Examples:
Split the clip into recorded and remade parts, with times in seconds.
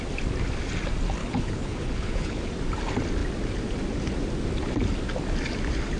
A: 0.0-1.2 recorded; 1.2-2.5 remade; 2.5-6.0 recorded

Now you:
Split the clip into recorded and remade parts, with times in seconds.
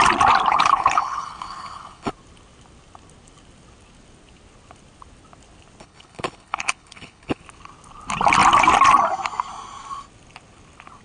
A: 0.0-0.5 recorded; 0.5-2.1 remade; 2.1-5.8 recorded; 5.8-7.4 remade; 7.4-11.0 recorded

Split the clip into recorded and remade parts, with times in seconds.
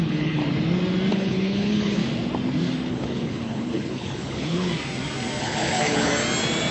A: 0.0-0.4 remade; 0.4-1.1 recorded; 1.1-2.0 remade; 2.0-2.9 recorded; 2.9-4.7 remade; 4.7-5.4 recorded; 5.4-6.1 remade; 6.1-6.7 recorded